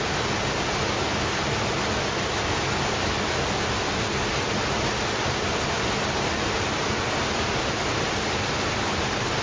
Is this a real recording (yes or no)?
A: yes